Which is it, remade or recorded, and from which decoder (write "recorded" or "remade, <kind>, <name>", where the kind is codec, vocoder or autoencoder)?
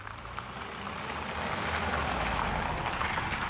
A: recorded